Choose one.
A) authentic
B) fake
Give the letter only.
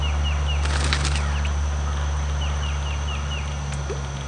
A